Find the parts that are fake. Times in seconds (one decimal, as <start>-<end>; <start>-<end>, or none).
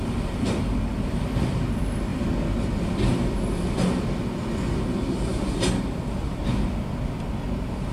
none